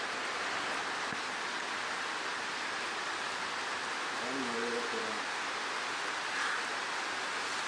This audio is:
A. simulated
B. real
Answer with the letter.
B